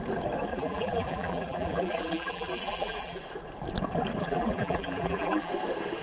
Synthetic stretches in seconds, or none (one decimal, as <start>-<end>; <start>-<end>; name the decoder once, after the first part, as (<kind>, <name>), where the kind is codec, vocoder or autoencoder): 0.5-3.2 (vocoder, BigVGAN v2); 4.2-5.5

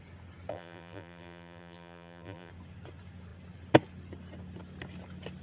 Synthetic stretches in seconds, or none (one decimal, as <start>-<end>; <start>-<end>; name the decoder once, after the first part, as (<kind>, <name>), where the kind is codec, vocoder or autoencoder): 0.5-2.5 (vocoder, BigVGAN v2)

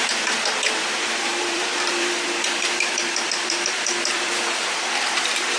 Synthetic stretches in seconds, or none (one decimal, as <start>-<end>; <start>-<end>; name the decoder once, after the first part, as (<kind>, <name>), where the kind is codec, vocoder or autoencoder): 0.0-5.6 (vocoder, BigVGAN v2)